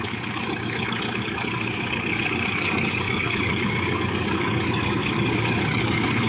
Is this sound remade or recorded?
remade